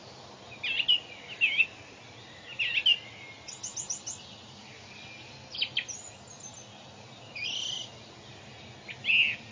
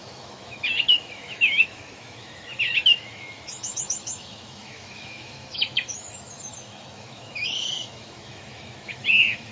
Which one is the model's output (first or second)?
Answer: second